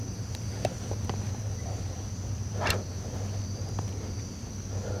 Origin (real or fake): real